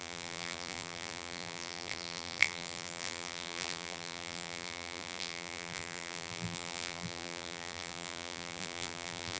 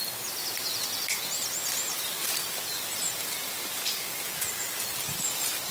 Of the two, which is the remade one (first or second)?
first